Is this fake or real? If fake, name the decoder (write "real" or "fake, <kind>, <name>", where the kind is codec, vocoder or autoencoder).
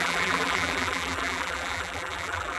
fake, vocoder, BigVGAN v2